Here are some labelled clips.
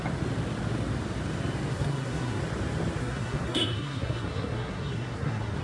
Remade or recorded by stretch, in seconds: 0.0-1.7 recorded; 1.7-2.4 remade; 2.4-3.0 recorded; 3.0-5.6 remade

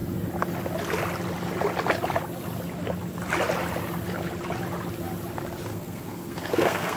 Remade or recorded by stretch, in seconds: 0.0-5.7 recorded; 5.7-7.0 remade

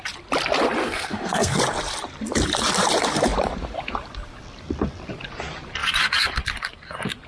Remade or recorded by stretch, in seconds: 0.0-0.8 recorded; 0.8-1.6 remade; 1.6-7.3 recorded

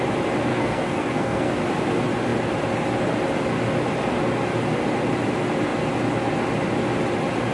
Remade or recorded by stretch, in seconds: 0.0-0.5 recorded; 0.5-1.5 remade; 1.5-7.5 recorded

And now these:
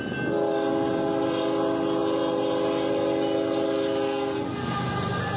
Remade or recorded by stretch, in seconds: 0.0-5.4 recorded

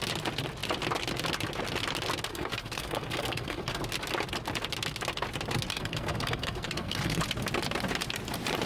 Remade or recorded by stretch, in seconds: 0.0-2.3 recorded; 2.3-3.8 remade; 3.8-5.7 recorded; 5.7-7.2 remade; 7.2-8.7 recorded

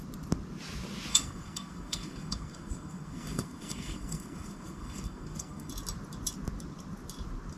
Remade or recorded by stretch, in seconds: 0.0-1.1 recorded; 1.1-5.7 remade; 5.7-7.6 recorded

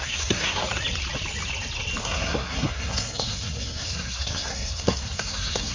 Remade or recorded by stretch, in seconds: 0.0-0.6 remade; 0.6-2.0 recorded; 2.0-5.7 remade